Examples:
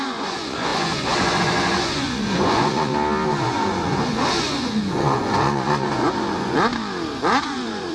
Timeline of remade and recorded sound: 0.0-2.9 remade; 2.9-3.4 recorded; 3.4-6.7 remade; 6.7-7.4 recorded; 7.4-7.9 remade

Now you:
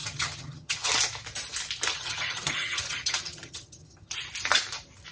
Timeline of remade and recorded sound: 0.0-0.9 remade; 0.9-1.9 recorded; 1.9-4.1 remade; 4.1-5.1 recorded

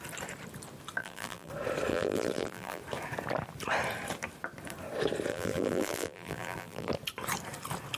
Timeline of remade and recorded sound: 0.0-1.0 recorded; 1.0-1.5 remade; 1.5-1.9 recorded; 1.9-2.8 remade; 2.8-5.3 recorded; 5.3-6.9 remade; 6.9-8.0 recorded

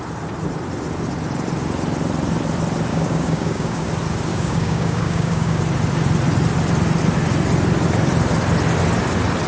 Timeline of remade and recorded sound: 0.0-2.9 recorded; 2.9-3.9 remade; 3.9-4.3 recorded; 4.3-5.6 remade; 5.6-9.5 recorded

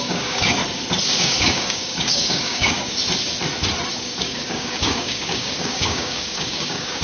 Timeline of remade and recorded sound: 0.0-0.6 remade; 0.6-1.1 recorded; 1.1-3.0 remade; 3.0-3.9 recorded; 3.9-7.0 remade

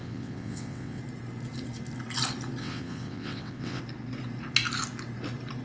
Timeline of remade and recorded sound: 0.0-1.0 remade; 1.0-2.6 recorded; 2.6-3.8 remade; 3.8-5.6 recorded